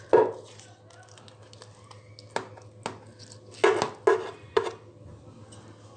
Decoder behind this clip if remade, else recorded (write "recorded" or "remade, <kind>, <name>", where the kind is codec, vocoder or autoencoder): recorded